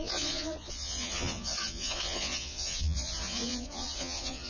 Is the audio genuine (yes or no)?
no